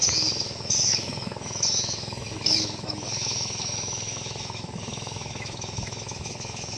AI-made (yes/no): yes